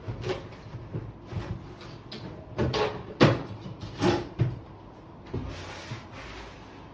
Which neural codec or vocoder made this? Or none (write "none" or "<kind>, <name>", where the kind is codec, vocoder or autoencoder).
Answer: none